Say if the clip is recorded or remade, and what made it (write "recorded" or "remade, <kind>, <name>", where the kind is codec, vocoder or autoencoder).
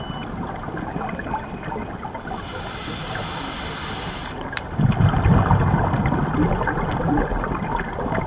recorded